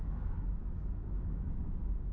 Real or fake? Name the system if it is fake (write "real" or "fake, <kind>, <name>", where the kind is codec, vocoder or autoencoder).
fake, autoencoder, DAC-VAE